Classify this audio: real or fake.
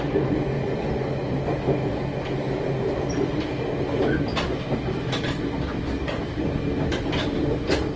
real